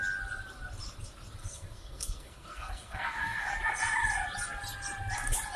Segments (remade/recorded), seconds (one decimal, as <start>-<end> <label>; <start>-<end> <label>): 0.0-1.4 recorded; 1.4-3.5 remade; 3.5-5.6 recorded